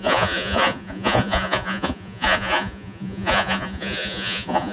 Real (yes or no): no